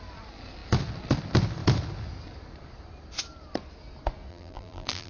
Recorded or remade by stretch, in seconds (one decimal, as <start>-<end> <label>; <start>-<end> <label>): 0.0-4.3 recorded; 4.3-5.1 remade